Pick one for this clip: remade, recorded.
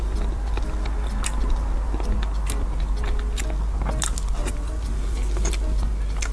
recorded